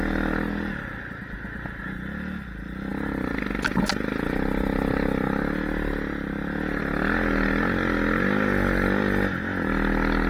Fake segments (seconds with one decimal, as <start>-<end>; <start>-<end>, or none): none

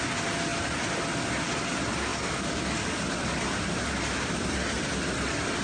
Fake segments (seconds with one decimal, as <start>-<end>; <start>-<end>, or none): 2.1-3.0